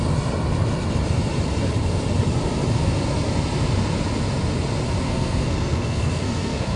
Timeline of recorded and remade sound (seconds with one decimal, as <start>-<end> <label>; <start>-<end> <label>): 0.0-5.0 recorded; 5.0-6.8 remade